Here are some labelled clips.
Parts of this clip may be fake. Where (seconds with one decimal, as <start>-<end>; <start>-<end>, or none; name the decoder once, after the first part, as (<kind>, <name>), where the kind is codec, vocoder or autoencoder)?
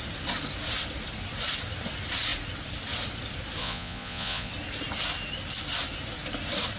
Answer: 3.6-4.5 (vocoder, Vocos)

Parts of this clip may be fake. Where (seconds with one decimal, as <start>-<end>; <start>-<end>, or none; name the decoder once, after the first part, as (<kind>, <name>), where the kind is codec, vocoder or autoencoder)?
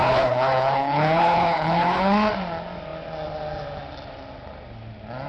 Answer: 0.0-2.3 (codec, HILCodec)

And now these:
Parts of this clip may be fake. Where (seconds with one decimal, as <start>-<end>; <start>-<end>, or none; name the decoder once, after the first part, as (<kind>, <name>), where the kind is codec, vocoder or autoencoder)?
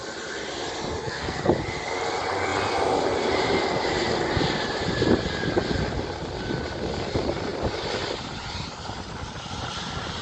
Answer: 1.0-1.5 (codec, SNAC)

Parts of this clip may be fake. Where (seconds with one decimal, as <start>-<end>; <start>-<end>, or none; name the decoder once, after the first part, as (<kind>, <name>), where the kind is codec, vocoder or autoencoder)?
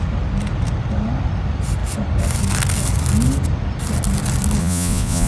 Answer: 4.6-5.3 (vocoder, Vocos)